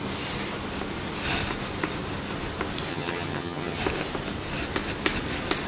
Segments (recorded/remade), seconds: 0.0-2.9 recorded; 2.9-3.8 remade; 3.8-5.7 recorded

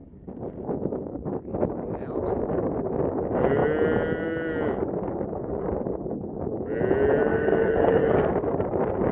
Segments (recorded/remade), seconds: 0.0-1.3 remade; 1.3-7.3 recorded; 7.3-8.2 remade; 8.2-9.1 recorded

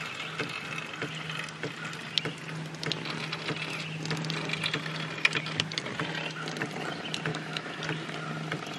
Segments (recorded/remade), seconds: 0.0-7.3 recorded; 7.3-7.8 remade; 7.8-8.8 recorded

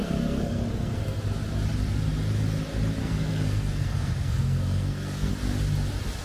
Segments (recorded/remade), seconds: 0.0-1.2 remade; 1.2-3.0 recorded; 3.0-5.3 remade; 5.3-6.2 recorded

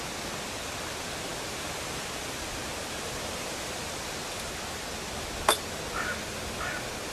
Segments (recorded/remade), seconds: 0.0-7.1 recorded